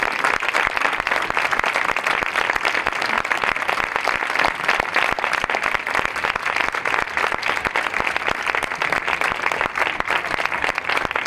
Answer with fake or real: real